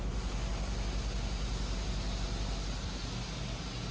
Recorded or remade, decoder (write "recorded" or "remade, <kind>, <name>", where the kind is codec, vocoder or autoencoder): recorded